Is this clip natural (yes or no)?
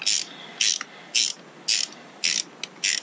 yes